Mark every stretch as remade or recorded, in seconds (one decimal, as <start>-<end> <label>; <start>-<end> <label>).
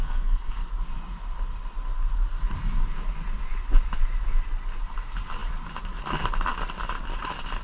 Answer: 0.0-0.7 remade; 0.7-7.6 recorded